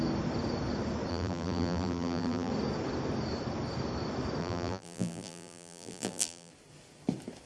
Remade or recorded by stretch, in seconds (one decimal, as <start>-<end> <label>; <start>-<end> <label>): 0.0-1.1 recorded; 1.1-2.5 remade; 2.5-4.4 recorded; 4.4-6.5 remade; 6.5-7.5 recorded